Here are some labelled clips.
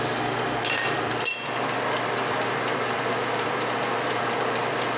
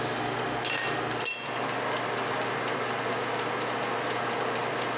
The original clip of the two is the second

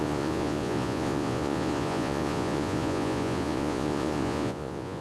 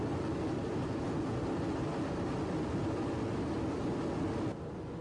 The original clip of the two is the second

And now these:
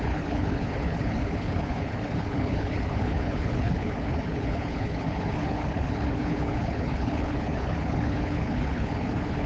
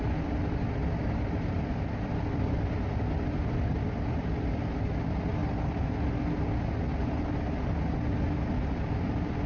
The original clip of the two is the second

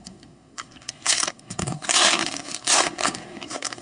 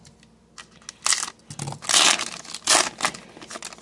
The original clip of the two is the second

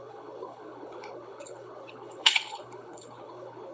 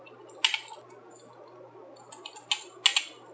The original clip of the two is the second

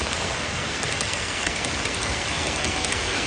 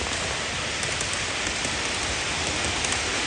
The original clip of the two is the second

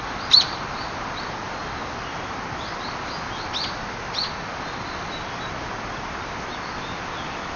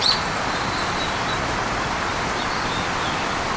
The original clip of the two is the first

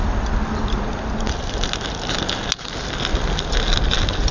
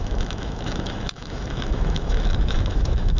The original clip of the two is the first